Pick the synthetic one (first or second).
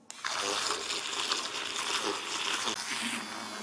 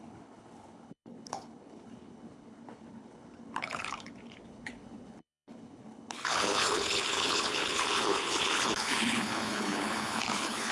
second